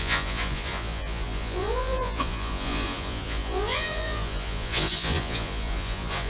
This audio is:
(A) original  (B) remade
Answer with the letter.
B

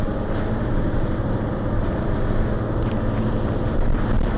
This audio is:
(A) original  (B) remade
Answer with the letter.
B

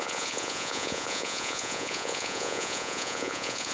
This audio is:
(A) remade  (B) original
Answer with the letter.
A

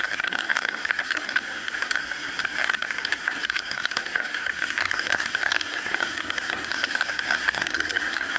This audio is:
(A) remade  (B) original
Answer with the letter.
A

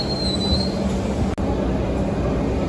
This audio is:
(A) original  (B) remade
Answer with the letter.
A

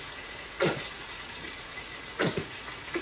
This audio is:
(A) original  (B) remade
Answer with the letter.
B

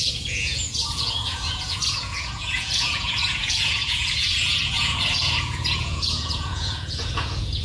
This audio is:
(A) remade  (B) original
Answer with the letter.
A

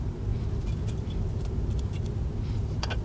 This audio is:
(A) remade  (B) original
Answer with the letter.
B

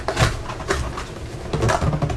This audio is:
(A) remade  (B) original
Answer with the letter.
B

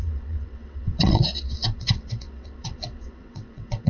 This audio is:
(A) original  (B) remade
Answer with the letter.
B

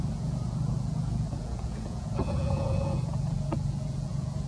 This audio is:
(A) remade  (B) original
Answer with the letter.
A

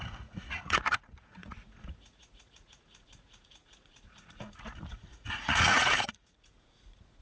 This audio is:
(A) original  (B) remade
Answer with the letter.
B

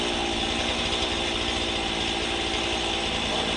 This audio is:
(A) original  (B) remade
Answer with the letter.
A